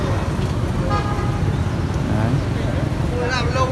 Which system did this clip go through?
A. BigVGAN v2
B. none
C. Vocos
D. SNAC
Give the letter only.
B